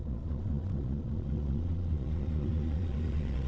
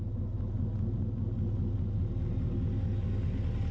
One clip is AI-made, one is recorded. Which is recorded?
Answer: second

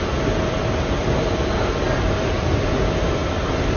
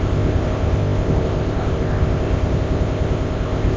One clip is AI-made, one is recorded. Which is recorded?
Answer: first